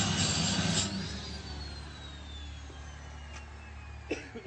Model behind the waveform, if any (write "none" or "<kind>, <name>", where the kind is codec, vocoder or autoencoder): none